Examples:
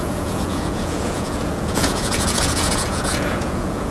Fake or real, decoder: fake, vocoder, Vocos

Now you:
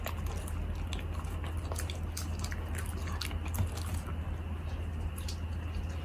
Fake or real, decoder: real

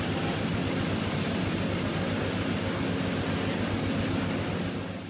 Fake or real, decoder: real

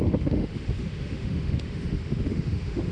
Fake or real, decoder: fake, autoencoder, DAC-VAE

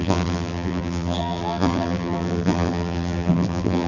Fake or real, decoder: fake, vocoder, BigVGAN v2